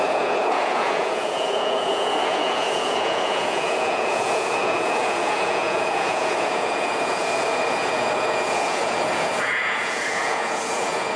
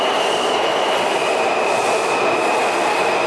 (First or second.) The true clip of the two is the second